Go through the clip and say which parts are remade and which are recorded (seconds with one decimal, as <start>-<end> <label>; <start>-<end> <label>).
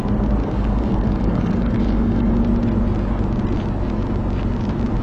0.0-0.4 recorded; 0.4-2.3 remade; 2.3-5.0 recorded